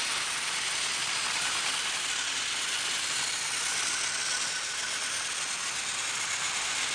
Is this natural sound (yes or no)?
yes